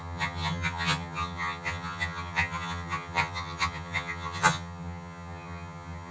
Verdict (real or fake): fake